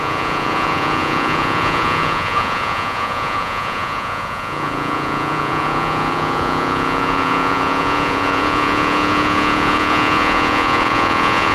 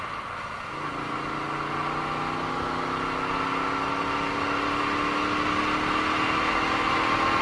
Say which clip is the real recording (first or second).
second